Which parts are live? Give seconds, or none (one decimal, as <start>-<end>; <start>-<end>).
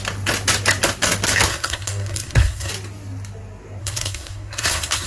0.0-1.5; 2.7-3.8